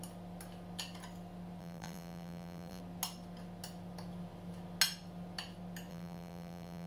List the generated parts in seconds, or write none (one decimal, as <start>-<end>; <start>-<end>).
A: 1.6-2.8; 5.9-6.9